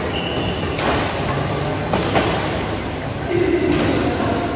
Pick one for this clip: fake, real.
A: real